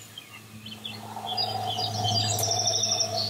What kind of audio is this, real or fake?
real